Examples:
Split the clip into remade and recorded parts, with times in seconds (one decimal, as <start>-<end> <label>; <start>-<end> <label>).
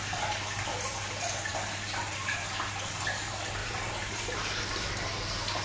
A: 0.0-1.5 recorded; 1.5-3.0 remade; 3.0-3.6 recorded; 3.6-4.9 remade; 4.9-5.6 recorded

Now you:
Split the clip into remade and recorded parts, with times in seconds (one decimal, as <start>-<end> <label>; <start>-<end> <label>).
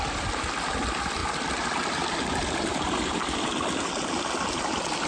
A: 0.0-1.2 recorded; 1.2-3.9 remade; 3.9-5.1 recorded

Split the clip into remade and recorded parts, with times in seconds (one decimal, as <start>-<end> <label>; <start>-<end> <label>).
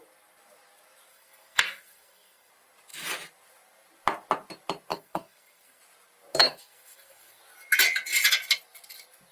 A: 0.0-1.1 recorded; 1.1-2.5 remade; 2.5-4.9 recorded; 4.9-5.8 remade; 5.8-6.4 recorded; 6.4-7.4 remade; 7.4-9.3 recorded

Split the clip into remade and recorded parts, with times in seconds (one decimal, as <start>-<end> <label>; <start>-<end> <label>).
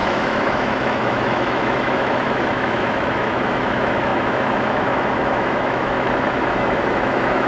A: 0.0-7.5 remade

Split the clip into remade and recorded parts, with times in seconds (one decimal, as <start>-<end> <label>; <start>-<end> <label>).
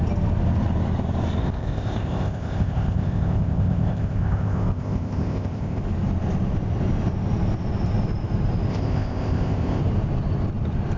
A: 0.0-1.4 recorded; 1.4-5.8 remade; 5.8-8.7 recorded; 8.7-9.8 remade; 9.8-11.0 recorded